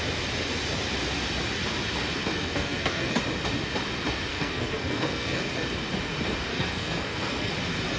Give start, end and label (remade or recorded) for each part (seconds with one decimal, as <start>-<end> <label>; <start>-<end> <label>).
0.0-2.2 recorded; 2.2-3.2 remade; 3.2-4.3 recorded; 4.3-5.5 remade; 5.5-6.5 recorded; 6.5-7.5 remade; 7.5-8.0 recorded